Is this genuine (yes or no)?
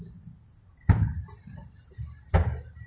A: yes